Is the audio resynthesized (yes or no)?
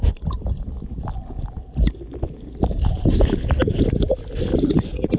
no